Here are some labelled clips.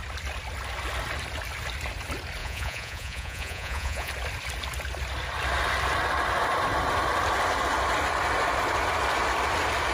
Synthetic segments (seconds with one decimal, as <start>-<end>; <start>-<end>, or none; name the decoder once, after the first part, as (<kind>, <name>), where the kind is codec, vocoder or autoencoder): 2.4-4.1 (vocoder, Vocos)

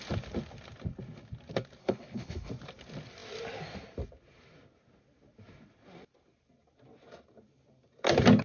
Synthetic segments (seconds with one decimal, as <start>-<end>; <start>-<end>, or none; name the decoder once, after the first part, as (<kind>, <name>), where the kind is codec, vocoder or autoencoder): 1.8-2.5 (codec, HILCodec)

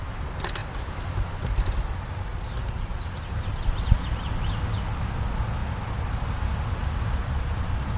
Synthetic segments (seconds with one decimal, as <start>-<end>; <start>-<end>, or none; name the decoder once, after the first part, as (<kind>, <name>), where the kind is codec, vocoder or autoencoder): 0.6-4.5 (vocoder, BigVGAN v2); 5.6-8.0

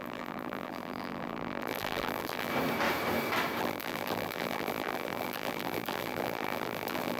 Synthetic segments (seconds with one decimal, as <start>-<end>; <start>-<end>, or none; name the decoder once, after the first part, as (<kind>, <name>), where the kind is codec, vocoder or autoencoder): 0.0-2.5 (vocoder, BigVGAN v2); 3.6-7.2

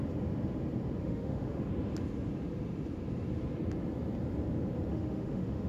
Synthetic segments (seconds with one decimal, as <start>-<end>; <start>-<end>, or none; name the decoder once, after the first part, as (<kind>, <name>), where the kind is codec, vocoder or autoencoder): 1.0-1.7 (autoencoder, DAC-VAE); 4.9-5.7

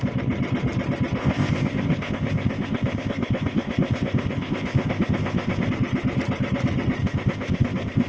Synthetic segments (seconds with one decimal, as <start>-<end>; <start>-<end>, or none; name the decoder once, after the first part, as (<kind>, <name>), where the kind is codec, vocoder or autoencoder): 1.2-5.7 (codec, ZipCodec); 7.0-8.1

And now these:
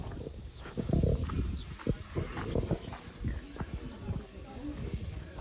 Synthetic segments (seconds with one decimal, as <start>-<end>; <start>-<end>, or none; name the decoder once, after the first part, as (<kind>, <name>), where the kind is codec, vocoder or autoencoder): 0.0-1.2 (codec, DAC); 4.2-5.4